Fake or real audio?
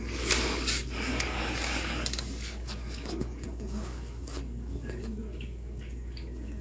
fake